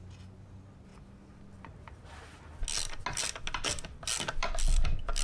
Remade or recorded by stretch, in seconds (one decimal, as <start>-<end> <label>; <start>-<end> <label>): 0.0-5.2 recorded